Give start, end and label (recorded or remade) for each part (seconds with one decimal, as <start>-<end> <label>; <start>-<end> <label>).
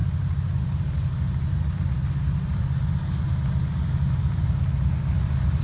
0.0-5.6 recorded